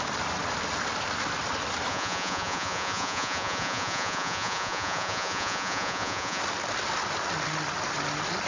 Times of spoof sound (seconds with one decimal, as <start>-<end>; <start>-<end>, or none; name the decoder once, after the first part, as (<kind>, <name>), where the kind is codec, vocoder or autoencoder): 1.9-6.4 (vocoder, Vocos)